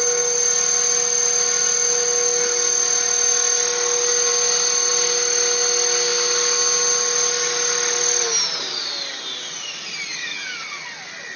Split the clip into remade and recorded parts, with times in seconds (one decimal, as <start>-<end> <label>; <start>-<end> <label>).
0.0-11.4 recorded